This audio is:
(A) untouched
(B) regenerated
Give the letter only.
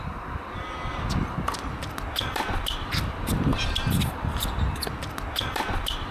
A